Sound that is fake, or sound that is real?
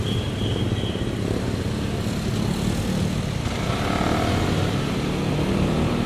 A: real